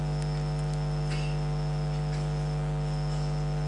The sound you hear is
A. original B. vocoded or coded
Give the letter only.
A